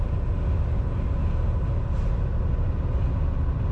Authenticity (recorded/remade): recorded